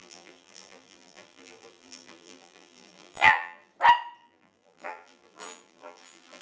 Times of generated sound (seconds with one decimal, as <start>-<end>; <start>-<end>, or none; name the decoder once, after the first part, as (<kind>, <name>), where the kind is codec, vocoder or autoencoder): 0.0-3.7 (vocoder, BigVGAN v2); 4.2-6.4